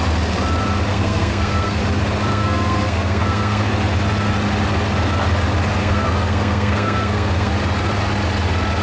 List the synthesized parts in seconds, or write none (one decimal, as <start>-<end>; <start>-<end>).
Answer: 0.9-1.8; 2.3-3.7; 5.8-7.5